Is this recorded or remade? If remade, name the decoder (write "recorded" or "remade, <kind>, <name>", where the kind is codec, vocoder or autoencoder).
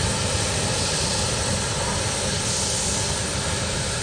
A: recorded